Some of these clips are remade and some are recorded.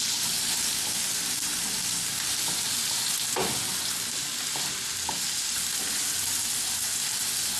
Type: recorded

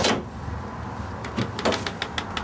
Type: recorded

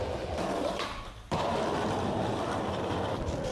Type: remade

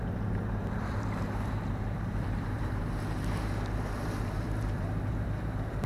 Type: remade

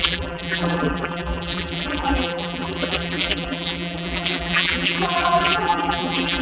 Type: remade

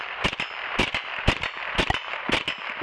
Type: recorded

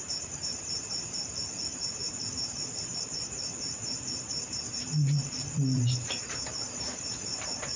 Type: remade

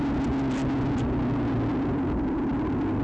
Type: recorded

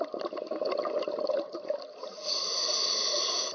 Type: recorded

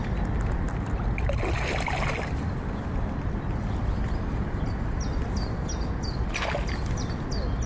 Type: recorded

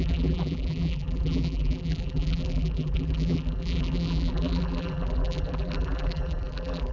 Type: remade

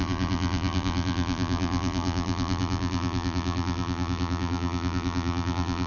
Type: remade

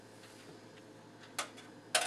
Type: recorded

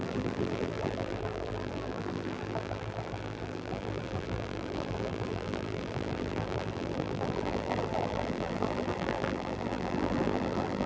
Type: remade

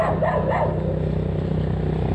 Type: recorded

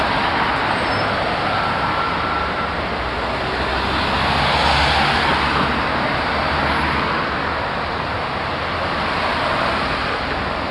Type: recorded